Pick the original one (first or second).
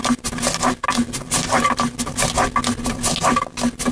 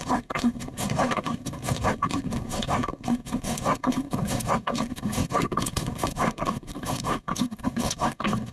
first